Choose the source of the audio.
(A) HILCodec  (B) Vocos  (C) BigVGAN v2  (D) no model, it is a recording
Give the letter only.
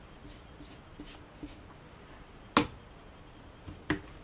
D